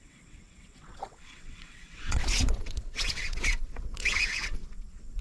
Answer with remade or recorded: remade